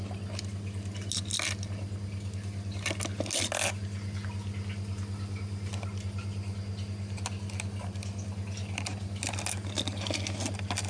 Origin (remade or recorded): recorded